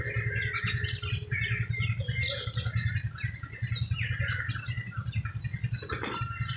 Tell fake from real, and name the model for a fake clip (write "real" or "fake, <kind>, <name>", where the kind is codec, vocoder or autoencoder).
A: real